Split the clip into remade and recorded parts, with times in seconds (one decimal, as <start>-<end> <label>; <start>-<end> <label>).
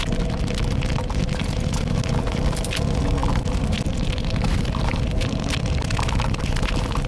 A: 0.0-7.1 recorded